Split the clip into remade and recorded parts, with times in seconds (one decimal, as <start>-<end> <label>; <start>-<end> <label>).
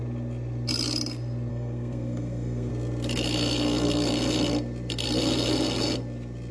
0.0-1.5 recorded; 1.5-2.7 remade; 2.7-6.5 recorded